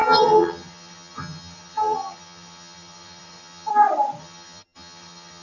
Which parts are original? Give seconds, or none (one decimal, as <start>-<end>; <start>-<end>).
3.7-4.2